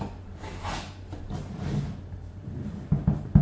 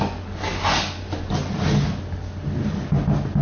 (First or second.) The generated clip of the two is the first